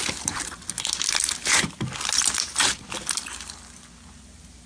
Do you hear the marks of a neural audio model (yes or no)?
no